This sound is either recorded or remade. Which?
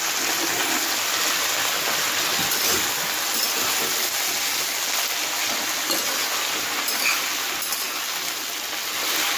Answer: recorded